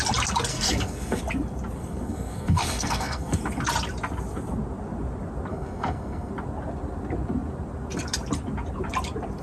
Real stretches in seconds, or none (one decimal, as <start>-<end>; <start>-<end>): 0.0-0.5; 1.2-1.8; 3.4-5.5; 6.3-9.4